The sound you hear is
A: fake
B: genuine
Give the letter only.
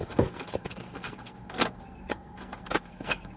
A